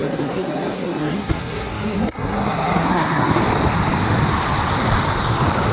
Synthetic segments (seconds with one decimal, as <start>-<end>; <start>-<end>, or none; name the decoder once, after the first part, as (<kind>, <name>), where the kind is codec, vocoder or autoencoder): 0.0-3.4 (codec, SNAC)